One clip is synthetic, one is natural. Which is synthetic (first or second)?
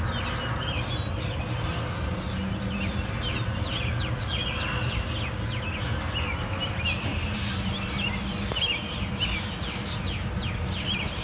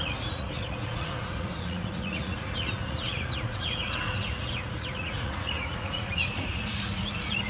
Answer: second